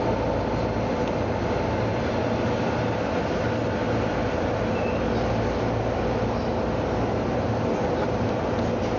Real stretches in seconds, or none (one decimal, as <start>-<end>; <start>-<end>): 0.0-9.0